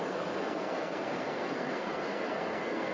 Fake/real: fake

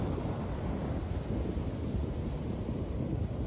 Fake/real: real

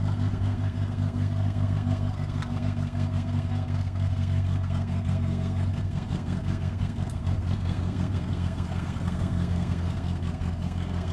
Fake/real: fake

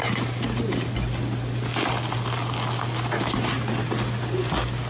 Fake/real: real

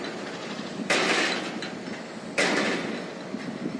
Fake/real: real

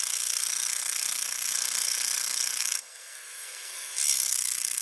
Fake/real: fake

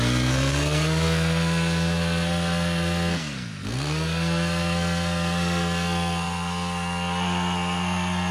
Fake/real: fake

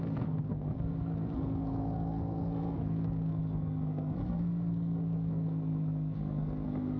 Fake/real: fake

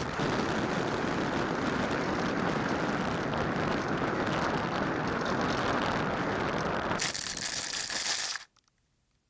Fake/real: real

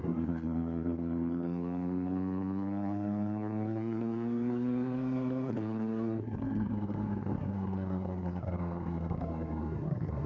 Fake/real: fake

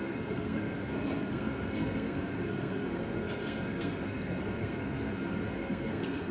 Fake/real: fake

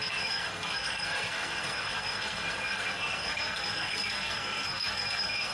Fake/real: fake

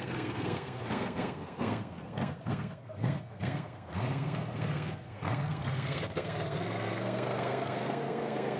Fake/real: fake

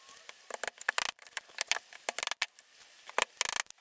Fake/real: real